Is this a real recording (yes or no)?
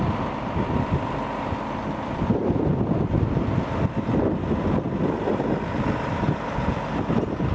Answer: yes